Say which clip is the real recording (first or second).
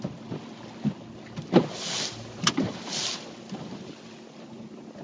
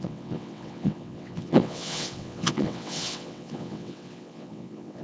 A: first